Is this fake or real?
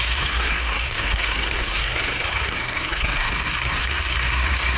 fake